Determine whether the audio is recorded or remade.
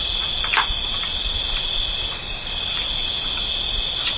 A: recorded